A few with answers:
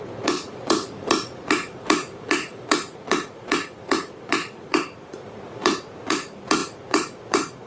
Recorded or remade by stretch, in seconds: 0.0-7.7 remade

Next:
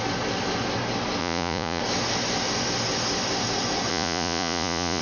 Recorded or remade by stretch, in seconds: 0.0-1.2 recorded; 1.2-1.8 remade; 1.8-3.9 recorded; 3.9-5.0 remade